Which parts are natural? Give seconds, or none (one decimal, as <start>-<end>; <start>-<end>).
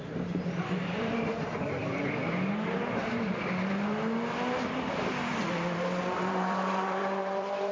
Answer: 1.8-5.3